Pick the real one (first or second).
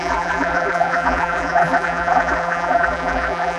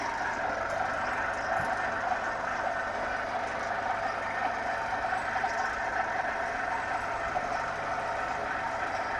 second